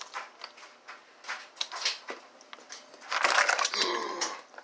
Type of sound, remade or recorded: recorded